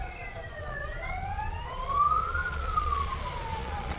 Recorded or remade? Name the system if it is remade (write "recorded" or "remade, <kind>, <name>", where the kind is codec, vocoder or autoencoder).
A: remade, vocoder, Vocos